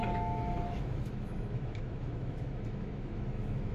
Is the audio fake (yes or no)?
yes